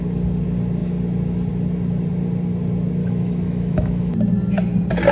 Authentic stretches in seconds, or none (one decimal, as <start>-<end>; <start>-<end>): 0.0-3.0; 4.1-5.1